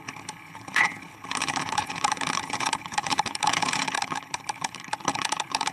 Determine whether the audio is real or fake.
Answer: fake